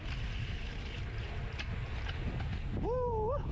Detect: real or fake real